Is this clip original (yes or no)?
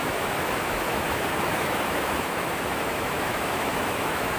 no